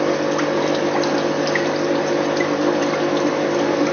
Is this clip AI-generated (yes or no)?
no